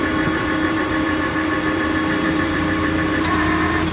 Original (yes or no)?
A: no